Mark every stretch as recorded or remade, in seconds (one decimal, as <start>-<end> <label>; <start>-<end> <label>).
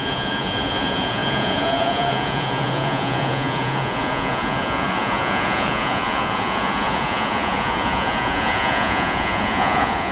0.0-10.1 remade